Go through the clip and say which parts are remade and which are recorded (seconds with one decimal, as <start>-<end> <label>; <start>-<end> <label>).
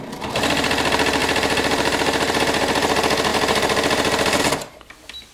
0.0-1.2 recorded; 1.2-2.4 remade; 2.4-5.3 recorded